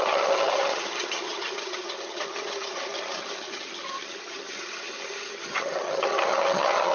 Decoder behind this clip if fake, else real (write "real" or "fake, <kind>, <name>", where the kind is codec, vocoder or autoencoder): fake, vocoder, HiFi-GAN